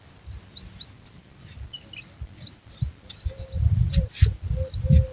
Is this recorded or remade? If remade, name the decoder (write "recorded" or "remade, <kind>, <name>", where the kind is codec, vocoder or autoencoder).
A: recorded